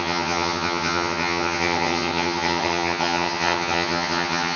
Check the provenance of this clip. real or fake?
fake